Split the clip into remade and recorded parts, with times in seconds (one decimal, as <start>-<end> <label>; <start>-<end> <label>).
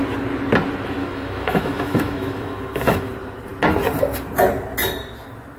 0.0-1.0 recorded; 1.0-3.1 remade; 3.1-5.6 recorded